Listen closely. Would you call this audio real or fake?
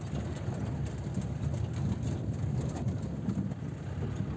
real